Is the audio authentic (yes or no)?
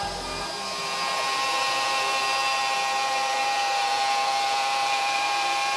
no